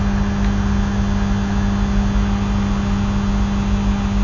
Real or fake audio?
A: real